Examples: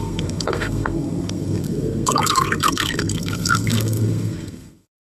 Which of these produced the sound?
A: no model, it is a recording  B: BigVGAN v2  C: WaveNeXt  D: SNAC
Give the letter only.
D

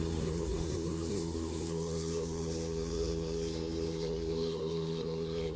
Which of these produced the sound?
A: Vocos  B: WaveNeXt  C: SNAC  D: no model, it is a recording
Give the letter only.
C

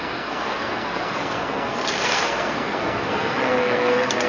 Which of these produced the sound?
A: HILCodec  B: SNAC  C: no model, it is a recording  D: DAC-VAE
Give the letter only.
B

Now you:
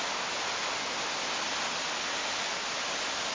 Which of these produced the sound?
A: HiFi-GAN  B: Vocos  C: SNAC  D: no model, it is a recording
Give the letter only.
D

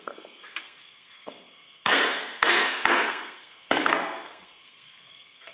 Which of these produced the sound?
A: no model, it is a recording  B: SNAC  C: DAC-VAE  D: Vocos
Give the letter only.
B